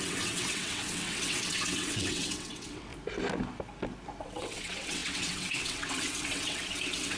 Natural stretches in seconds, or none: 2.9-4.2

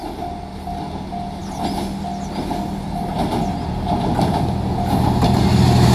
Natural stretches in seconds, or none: 0.0-5.9

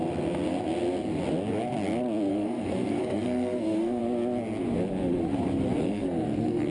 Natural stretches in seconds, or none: 0.0-2.3; 4.0-5.8